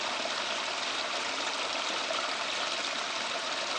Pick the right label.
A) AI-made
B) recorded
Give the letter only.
B